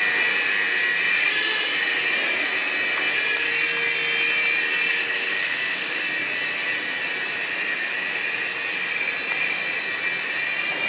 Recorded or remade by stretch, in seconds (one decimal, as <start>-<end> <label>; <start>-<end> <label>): 0.0-4.9 recorded; 4.9-6.0 remade; 6.0-10.9 recorded